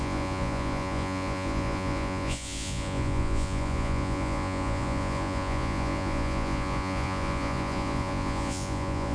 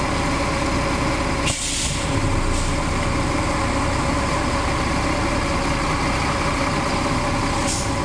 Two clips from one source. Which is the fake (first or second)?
first